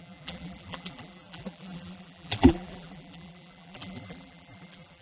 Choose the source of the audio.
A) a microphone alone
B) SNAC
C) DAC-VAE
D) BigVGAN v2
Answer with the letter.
D